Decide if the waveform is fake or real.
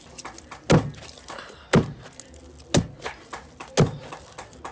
real